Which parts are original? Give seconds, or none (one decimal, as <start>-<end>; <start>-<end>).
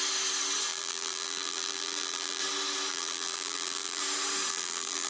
0.0-0.7; 2.4-2.9; 4.0-4.5